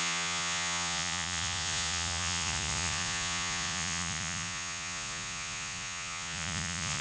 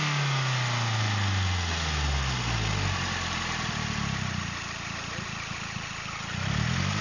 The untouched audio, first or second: second